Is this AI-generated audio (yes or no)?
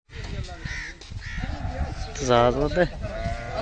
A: no